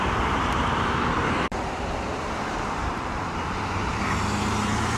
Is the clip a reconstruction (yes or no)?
yes